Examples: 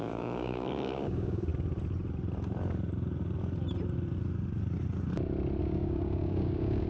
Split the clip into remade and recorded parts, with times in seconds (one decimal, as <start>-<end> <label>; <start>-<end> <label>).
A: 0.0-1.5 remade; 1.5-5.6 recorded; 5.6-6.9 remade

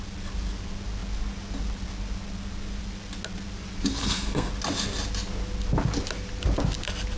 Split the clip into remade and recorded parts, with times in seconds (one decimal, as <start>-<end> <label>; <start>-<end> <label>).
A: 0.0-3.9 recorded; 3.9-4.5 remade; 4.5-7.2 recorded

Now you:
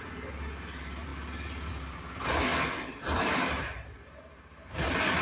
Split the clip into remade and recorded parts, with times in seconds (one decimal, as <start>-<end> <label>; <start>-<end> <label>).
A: 0.0-1.1 remade; 1.1-1.7 recorded; 1.7-2.5 remade; 2.5-3.0 recorded; 3.0-5.2 remade